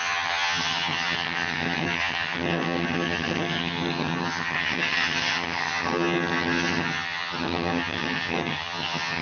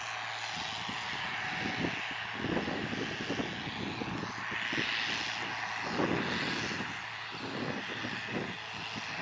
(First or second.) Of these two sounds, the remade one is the first